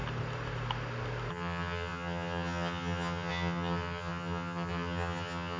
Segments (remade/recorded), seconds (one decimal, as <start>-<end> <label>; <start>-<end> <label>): 0.0-1.3 recorded; 1.3-5.6 remade